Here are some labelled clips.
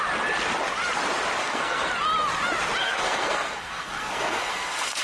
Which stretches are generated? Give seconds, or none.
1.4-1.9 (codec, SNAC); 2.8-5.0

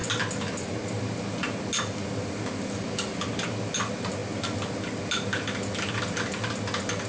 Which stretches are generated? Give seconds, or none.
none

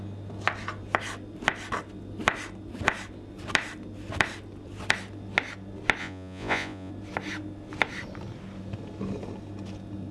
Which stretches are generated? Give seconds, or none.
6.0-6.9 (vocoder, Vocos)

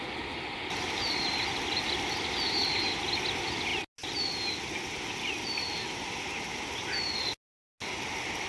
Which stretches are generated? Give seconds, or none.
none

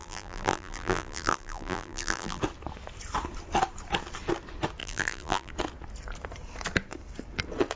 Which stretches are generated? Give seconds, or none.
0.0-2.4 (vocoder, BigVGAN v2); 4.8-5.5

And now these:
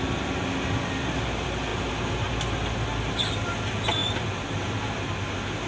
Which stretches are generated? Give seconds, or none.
none